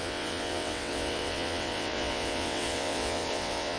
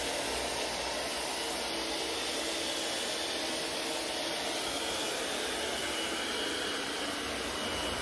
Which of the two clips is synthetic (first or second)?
first